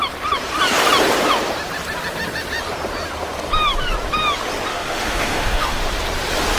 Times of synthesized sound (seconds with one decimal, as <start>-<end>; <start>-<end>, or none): 4.7-5.8